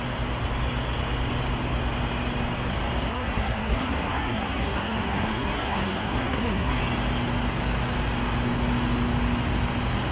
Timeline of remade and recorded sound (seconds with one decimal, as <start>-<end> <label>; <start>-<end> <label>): 0.0-3.1 recorded; 3.1-6.8 remade; 6.8-10.1 recorded